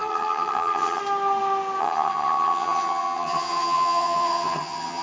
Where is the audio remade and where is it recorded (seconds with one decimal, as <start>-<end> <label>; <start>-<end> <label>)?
0.0-1.0 remade; 1.0-1.8 recorded; 1.8-5.0 remade